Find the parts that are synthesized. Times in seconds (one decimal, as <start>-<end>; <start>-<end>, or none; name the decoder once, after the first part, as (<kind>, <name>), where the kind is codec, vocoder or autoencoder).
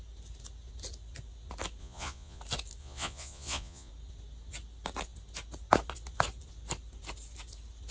1.8-2.4 (vocoder, Vocos); 2.8-3.9